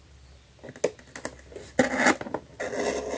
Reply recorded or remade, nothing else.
recorded